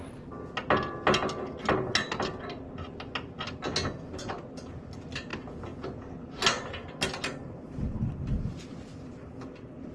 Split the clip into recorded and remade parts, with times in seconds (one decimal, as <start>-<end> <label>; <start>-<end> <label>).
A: 0.0-9.9 recorded